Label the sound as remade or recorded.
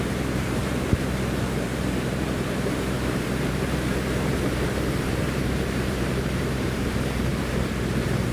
remade